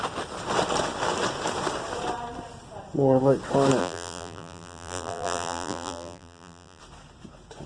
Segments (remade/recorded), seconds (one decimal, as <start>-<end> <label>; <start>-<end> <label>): 0.0-3.8 recorded; 3.8-6.8 remade; 6.8-7.7 recorded